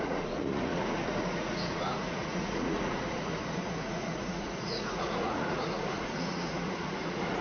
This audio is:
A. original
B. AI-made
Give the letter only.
B